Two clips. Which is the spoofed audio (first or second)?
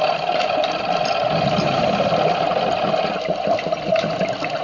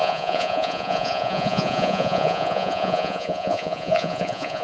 second